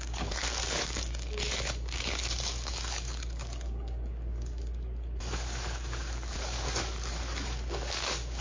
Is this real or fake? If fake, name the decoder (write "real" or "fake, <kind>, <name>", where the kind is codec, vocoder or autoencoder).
fake, codec, DAC